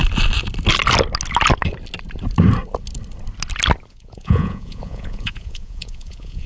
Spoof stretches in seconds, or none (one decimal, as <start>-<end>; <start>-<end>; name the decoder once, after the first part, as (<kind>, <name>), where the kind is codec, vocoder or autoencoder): 3.9-6.5 (vocoder, Vocos)